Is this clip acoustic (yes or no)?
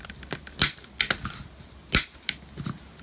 yes